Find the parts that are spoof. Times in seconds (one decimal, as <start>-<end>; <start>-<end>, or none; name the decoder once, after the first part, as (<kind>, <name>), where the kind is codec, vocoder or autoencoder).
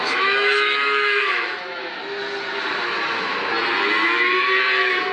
0.0-2.0 (autoencoder, DAC-VAE); 2.8-3.3; 4.0-5.1